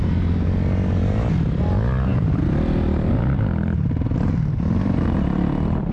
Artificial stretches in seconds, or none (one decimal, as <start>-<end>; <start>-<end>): none